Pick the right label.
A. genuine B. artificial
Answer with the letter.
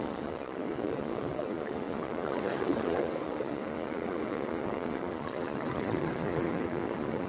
B